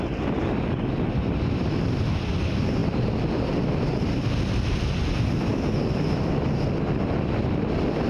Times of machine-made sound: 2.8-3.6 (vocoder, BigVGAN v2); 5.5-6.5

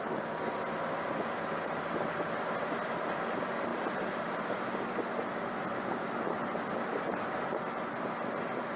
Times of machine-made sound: 3.7-4.5 (vocoder, BigVGAN v2)

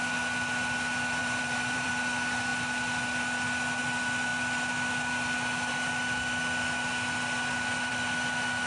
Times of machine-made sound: 1.2-1.9 (vocoder, BigVGAN v2)

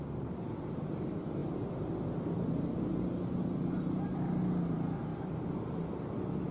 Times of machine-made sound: none